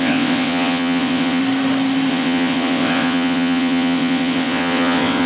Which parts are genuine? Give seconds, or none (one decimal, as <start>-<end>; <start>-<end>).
1.4-2.1